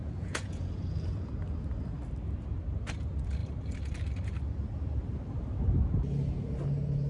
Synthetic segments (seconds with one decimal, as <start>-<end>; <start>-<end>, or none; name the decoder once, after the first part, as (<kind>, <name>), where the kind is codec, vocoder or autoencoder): 0.0-1.3 (vocoder, Vocos)